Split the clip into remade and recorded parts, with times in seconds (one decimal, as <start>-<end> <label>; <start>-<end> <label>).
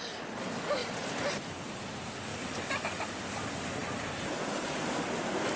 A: 0.0-3.8 recorded; 3.8-5.0 remade; 5.0-5.6 recorded